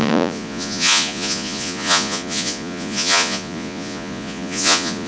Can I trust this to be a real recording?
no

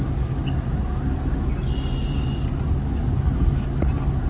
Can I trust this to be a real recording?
yes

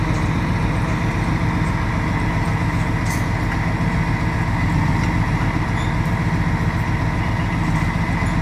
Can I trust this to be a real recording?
yes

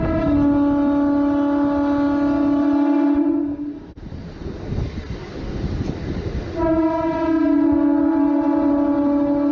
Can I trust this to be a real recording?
yes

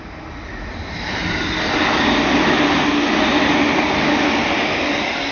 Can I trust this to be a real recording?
yes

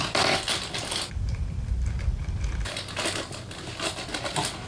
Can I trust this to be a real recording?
yes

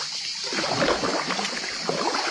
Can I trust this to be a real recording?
yes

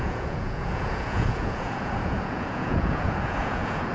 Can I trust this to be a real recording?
no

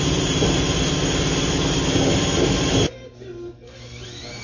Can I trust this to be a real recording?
yes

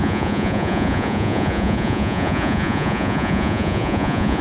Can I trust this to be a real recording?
no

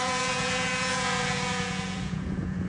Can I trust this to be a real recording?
no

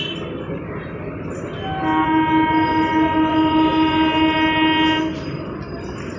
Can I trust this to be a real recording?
yes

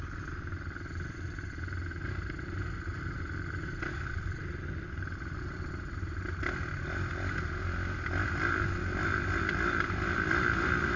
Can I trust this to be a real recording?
yes